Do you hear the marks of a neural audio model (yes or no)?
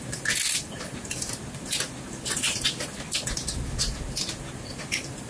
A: no